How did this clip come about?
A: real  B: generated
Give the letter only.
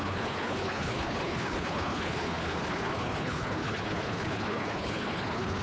B